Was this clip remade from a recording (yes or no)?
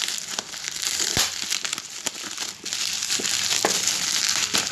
no